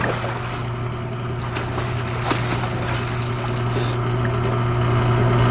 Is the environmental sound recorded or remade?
recorded